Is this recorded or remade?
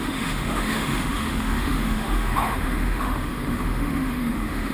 remade